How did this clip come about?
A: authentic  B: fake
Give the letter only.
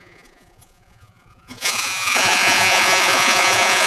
B